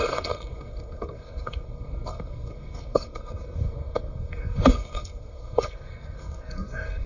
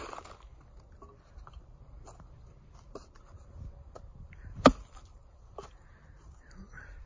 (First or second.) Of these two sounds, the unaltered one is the second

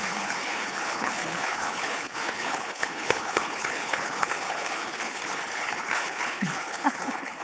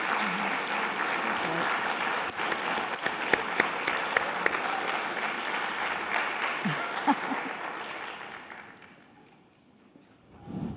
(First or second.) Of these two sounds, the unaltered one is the second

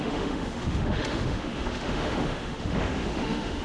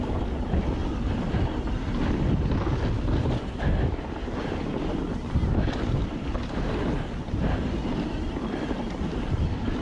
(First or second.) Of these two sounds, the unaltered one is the second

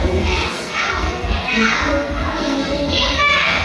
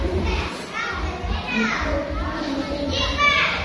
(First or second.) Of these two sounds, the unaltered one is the second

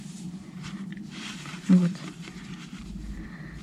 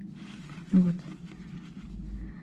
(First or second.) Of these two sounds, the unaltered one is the second